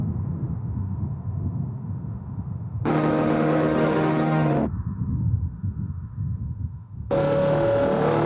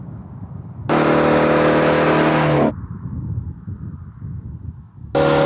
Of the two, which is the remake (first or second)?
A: first